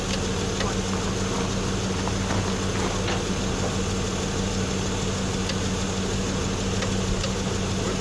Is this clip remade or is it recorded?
recorded